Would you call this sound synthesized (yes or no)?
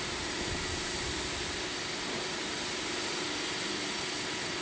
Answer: no